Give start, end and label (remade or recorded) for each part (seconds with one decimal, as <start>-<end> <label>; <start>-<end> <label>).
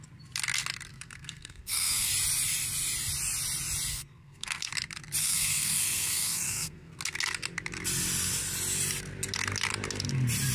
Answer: 0.0-0.9 recorded; 0.9-2.1 remade; 2.1-3.9 recorded; 3.9-4.7 remade; 4.7-5.2 recorded; 5.2-7.0 remade; 7.0-10.5 recorded